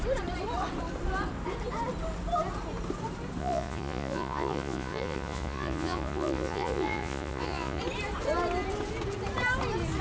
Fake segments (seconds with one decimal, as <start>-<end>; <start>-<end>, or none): 3.4-7.8